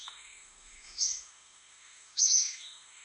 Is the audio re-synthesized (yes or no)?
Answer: yes